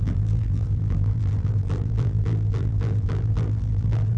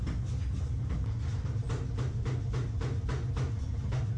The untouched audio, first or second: second